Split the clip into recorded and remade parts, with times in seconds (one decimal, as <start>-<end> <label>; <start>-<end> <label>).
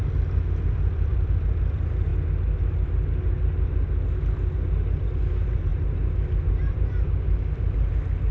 0.0-2.1 remade; 2.1-5.0 recorded; 5.0-5.7 remade; 5.7-6.5 recorded; 6.5-8.3 remade